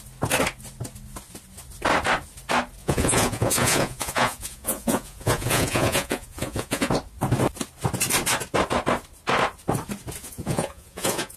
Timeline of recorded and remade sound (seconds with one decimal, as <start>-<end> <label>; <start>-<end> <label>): 0.0-2.8 recorded; 2.8-6.9 remade; 6.9-10.2 recorded; 10.2-11.4 remade